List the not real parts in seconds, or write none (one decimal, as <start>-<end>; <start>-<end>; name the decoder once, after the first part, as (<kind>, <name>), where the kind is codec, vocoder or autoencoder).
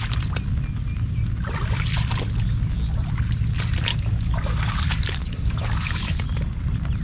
3.9-4.8 (codec, DAC); 5.2-6.2